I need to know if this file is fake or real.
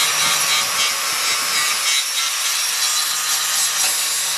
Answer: real